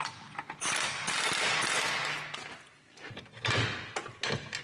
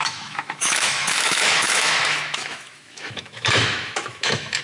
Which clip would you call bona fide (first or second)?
first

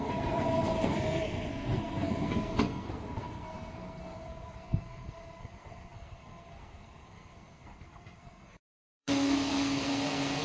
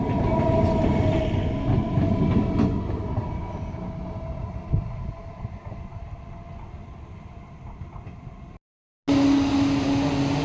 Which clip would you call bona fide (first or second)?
second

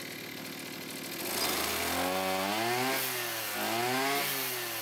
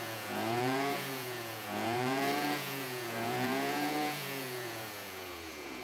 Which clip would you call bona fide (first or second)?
first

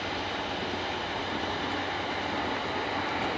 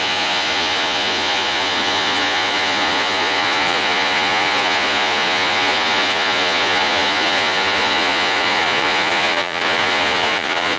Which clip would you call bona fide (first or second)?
first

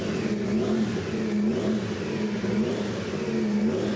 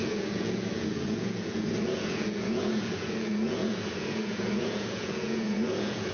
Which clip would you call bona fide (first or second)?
first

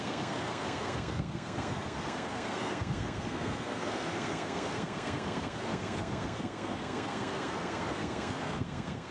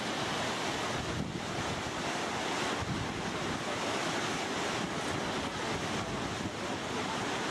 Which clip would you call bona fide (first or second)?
second